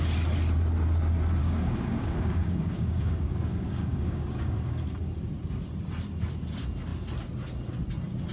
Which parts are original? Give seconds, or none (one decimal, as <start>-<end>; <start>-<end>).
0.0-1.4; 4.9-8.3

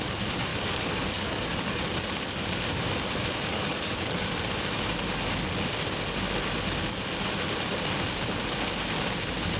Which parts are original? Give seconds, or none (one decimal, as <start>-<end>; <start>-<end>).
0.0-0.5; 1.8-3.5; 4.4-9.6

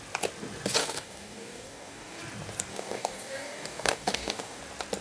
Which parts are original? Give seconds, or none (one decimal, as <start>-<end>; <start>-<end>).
0.0-0.8; 2.2-2.7; 4.6-5.0

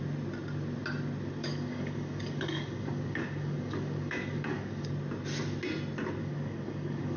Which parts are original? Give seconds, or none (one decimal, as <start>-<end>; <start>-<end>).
0.0-1.4; 4.9-6.2

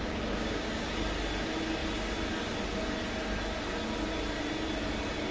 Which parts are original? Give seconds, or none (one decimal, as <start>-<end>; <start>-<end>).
0.7-5.3